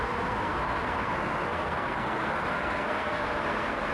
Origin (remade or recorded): remade